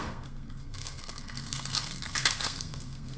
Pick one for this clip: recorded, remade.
remade